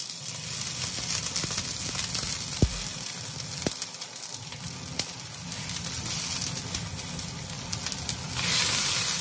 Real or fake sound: real